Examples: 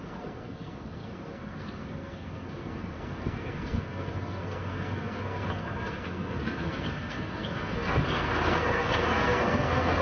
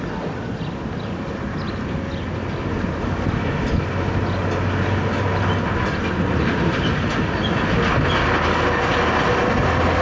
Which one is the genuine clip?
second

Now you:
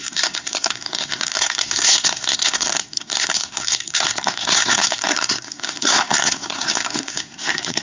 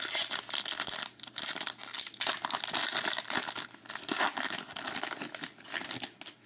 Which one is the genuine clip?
second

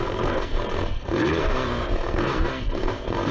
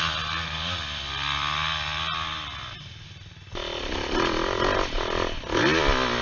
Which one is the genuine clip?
second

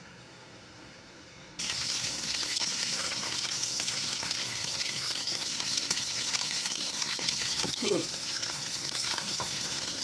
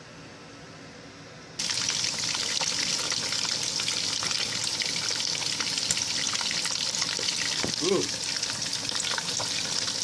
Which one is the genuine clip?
second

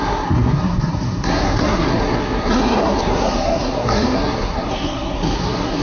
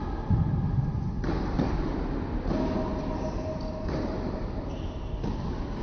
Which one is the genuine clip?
second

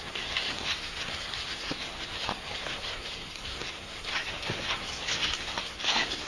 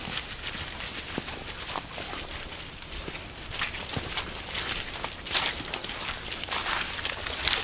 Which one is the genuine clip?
second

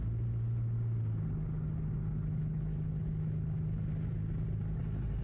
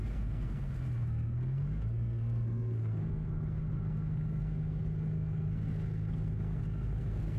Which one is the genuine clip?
first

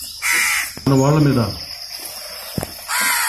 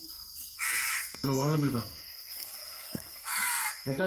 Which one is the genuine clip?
first